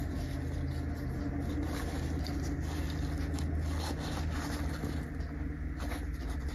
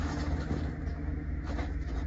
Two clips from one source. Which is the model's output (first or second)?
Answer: second